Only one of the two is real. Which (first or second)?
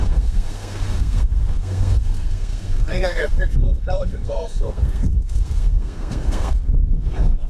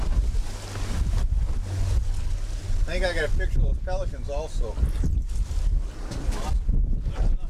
second